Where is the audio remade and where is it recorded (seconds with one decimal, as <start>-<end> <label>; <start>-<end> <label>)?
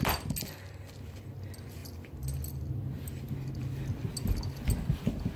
0.0-5.4 recorded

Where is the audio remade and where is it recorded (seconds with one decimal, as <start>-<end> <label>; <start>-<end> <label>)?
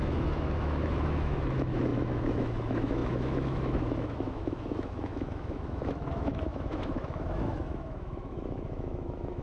0.0-9.4 remade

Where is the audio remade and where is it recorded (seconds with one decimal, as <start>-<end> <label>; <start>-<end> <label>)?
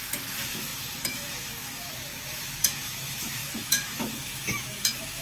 0.0-5.2 remade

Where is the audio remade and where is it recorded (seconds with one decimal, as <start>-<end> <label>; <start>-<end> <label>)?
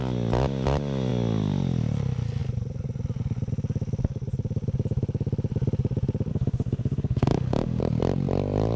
0.0-6.3 recorded; 6.3-7.8 remade; 7.8-8.8 recorded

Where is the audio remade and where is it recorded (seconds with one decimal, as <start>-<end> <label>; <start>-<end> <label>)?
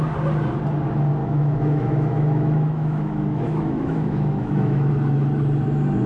0.0-1.2 recorded; 1.2-4.9 remade; 4.9-6.1 recorded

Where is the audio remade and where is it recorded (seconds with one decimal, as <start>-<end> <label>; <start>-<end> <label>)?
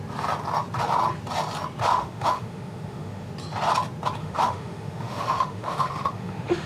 0.0-1.9 recorded; 1.9-3.3 remade; 3.3-4.2 recorded; 4.2-6.7 remade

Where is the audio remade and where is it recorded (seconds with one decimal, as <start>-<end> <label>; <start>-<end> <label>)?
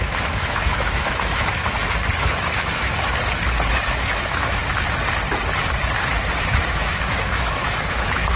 0.0-1.6 remade; 1.6-2.2 recorded; 2.2-2.9 remade; 2.9-3.7 recorded; 3.7-4.6 remade; 4.6-6.1 recorded; 6.1-8.4 remade